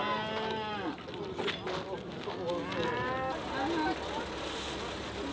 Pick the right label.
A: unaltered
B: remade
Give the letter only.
A